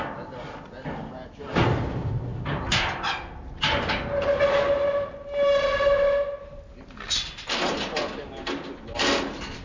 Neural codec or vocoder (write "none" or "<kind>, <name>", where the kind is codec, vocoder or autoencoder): none